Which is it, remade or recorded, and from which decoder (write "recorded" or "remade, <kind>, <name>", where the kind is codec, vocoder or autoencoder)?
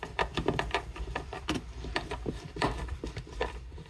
remade, vocoder, BigVGAN v2